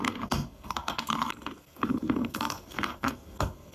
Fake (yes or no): yes